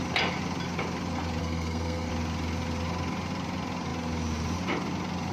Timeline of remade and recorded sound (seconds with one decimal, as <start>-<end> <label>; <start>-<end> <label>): 0.0-1.4 recorded; 1.4-2.1 remade; 2.1-5.3 recorded